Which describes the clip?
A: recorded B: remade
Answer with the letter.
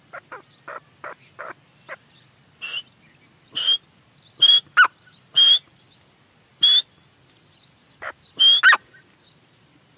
A